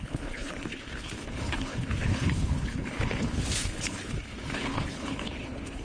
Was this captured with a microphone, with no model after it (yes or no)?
no